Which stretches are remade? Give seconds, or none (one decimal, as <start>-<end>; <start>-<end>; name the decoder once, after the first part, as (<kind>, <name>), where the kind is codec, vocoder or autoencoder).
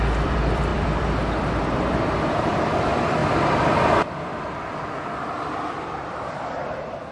0.0-7.1 (vocoder, BigVGAN v2)